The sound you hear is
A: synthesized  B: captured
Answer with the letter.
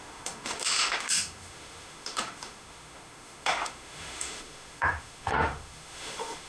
A